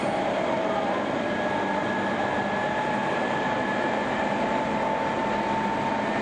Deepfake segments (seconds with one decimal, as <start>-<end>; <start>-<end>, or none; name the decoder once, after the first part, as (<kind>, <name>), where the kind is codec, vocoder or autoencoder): 0.0-0.6 (vocoder, BigVGAN v2); 2.6-6.2